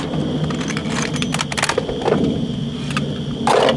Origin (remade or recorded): recorded